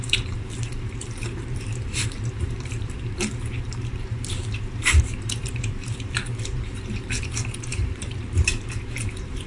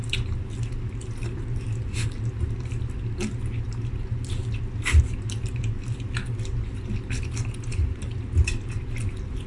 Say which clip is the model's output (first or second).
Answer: first